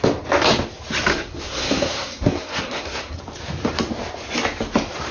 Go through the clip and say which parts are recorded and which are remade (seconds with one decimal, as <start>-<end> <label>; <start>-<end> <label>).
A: 0.0-1.1 recorded; 1.1-3.2 remade; 3.2-5.1 recorded